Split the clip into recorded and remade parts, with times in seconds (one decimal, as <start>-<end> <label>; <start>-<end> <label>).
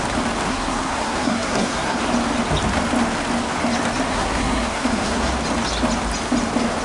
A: 0.0-0.5 recorded; 0.5-2.0 remade; 2.0-4.1 recorded; 4.1-5.3 remade; 5.3-6.8 recorded